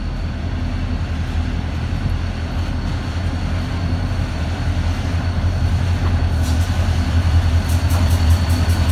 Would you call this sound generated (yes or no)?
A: no